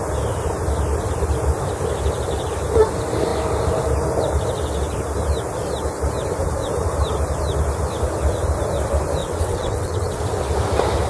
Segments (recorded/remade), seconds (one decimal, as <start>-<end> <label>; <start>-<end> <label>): 0.0-9.2 recorded; 9.2-10.2 remade; 10.2-11.1 recorded